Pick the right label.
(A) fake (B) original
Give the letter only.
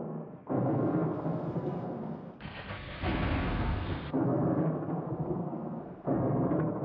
A